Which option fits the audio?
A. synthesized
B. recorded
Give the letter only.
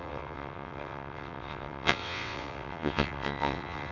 A